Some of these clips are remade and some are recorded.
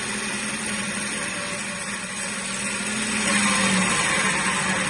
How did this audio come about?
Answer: recorded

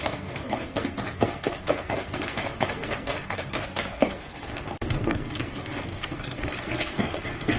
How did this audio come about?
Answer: remade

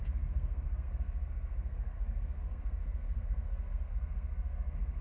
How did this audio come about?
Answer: remade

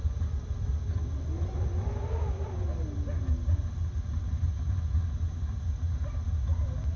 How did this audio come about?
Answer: recorded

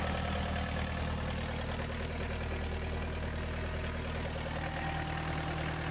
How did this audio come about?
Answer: recorded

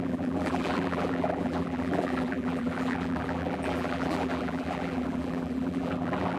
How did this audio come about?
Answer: remade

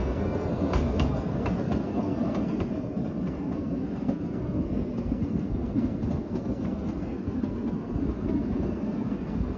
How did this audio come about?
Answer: remade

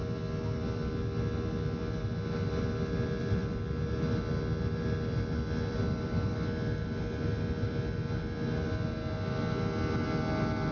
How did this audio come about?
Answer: recorded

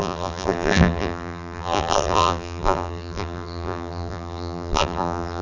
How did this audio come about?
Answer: remade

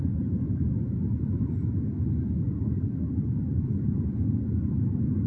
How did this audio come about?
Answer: recorded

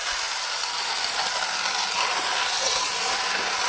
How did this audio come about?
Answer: recorded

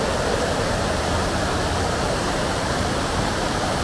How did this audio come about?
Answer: remade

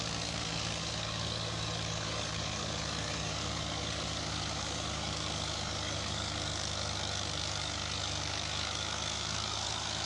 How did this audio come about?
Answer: remade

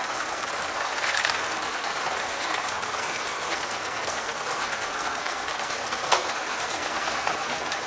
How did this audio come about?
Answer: remade